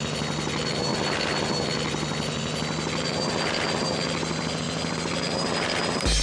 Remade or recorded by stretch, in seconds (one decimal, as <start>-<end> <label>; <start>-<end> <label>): 0.0-6.2 recorded

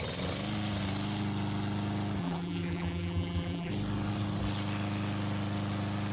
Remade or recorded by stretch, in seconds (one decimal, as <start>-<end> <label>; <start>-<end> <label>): 0.0-2.2 recorded; 2.2-3.7 remade; 3.7-6.1 recorded

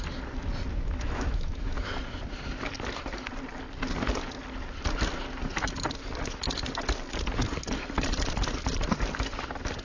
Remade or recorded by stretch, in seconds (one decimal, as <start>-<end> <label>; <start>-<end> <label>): 0.0-0.7 recorded; 0.7-1.8 remade; 1.8-9.8 recorded

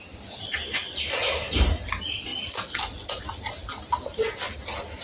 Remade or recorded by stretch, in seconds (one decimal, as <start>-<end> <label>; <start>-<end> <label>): 0.0-5.0 recorded

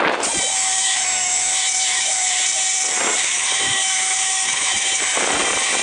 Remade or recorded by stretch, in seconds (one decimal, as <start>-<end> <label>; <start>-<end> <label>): 0.0-0.5 recorded; 0.5-2.4 remade; 2.4-3.2 recorded; 3.2-5.0 remade; 5.0-5.8 recorded

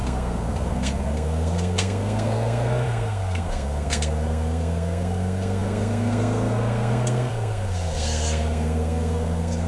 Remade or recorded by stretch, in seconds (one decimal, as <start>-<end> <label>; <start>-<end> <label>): 0.0-9.7 remade